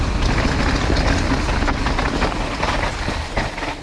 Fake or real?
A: real